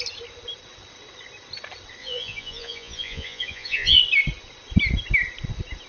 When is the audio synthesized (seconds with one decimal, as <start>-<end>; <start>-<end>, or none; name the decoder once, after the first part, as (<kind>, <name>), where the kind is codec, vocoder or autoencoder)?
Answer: 2.0-4.0 (vocoder, Vocos)

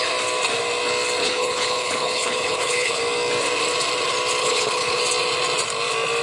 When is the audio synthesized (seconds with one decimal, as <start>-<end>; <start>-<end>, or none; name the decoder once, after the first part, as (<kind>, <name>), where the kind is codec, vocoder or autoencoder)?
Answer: 1.2-3.0 (codec, HILCodec); 4.4-5.0

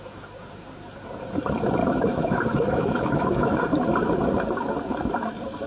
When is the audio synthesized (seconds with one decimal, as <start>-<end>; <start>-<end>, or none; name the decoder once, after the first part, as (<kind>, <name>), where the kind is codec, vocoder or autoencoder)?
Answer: 1.8-3.6 (autoencoder, DAC-VAE)

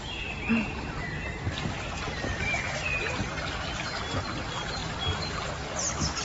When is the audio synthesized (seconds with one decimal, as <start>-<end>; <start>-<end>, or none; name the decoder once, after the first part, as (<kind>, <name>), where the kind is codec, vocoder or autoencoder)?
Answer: none